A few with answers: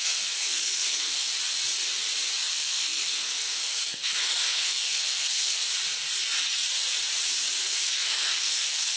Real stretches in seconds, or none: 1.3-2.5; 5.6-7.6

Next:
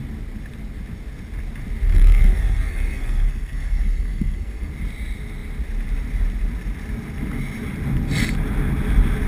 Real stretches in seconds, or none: 0.0-1.9; 4.7-9.3

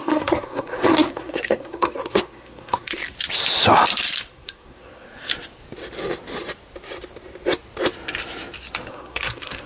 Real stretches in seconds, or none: 3.0-4.3; 5.3-8.9